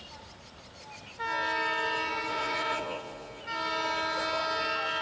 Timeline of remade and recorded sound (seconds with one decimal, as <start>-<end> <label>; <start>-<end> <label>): 0.0-2.3 recorded; 2.3-3.4 remade; 3.4-5.0 recorded